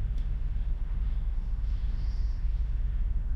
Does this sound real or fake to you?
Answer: fake